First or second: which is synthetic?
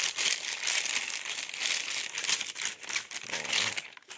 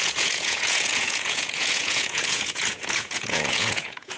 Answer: second